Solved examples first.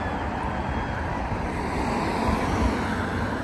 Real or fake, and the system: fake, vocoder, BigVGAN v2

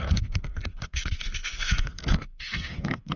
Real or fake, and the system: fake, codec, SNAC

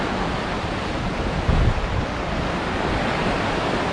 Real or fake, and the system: real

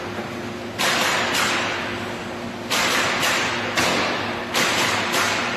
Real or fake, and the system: real